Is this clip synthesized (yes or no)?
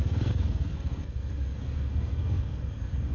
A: yes